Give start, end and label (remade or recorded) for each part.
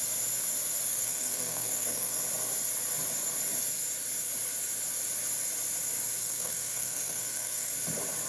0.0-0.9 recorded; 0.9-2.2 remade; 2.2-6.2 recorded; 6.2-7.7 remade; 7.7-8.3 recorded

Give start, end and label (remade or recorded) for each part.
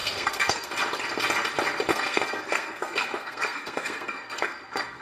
0.0-0.7 remade; 0.7-1.9 recorded; 1.9-5.0 remade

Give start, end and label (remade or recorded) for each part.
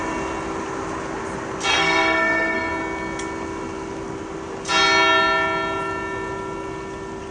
0.0-1.7 recorded; 1.7-2.7 remade; 2.7-7.3 recorded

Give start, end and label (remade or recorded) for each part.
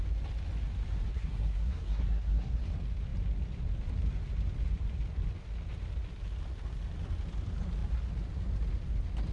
0.0-1.1 recorded; 1.1-2.6 remade; 2.6-9.3 recorded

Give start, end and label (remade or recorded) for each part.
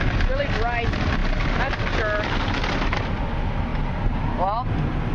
0.0-5.1 recorded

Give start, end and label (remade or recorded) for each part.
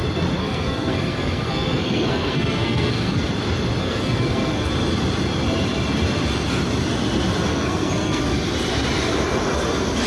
0.0-0.4 recorded; 0.4-3.3 remade; 3.3-3.8 recorded; 3.8-4.7 remade; 4.7-7.5 recorded; 7.5-8.2 remade; 8.2-10.1 recorded